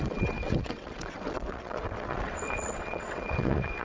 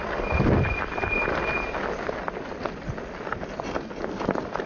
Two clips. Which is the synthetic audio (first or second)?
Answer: first